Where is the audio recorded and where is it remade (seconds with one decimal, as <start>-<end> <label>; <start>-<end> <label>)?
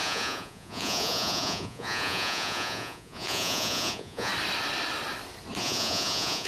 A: 0.0-4.3 remade; 4.3-5.6 recorded; 5.6-6.5 remade